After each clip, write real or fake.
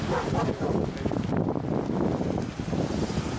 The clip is real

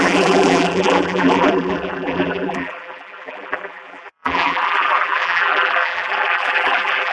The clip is fake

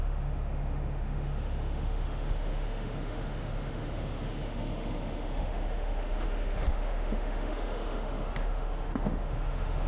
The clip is fake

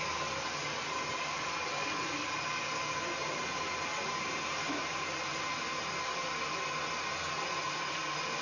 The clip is real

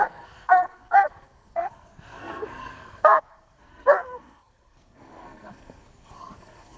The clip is fake